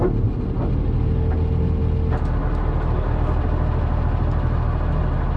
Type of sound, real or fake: real